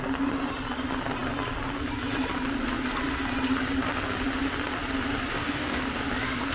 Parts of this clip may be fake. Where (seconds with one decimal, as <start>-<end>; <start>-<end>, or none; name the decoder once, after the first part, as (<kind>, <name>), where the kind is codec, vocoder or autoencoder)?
5.3-5.8 (codec, DAC)